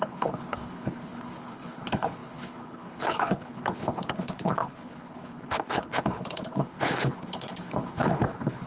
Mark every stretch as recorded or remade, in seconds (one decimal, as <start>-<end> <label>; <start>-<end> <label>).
0.0-8.7 remade